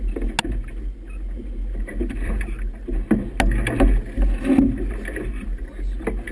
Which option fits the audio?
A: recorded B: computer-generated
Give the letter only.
A